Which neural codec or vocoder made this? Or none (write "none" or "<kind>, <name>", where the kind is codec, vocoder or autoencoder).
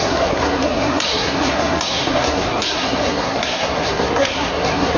codec, SNAC